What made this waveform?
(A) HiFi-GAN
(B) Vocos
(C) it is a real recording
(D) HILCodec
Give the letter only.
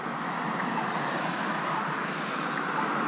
C